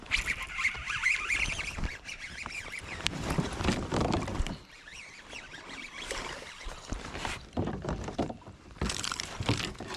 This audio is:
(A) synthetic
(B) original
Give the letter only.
A